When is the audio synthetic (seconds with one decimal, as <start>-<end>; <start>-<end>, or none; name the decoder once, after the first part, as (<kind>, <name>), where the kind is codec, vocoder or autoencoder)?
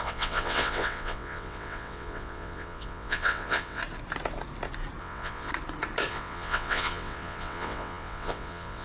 0.0-3.8 (vocoder, WaveNeXt); 5.0-5.5; 6.1-8.8